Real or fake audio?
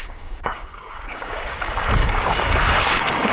fake